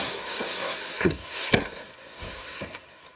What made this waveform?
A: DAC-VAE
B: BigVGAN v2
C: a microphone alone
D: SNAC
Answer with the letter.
D